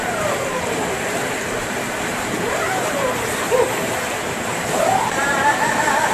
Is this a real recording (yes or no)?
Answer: no